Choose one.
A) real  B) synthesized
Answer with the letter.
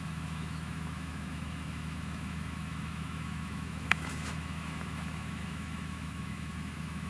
B